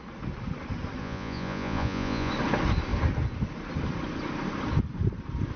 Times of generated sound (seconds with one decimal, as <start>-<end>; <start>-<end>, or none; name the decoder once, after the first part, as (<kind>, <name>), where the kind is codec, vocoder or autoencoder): 1.0-2.3 (vocoder, Vocos)